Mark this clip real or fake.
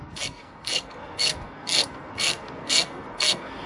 fake